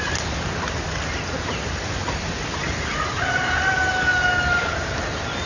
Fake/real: real